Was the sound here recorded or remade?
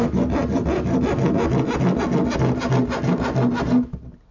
recorded